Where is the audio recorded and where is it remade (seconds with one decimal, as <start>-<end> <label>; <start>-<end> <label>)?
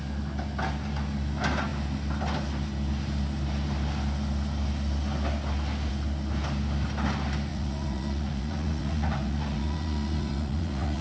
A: 0.0-7.5 recorded; 7.5-11.0 remade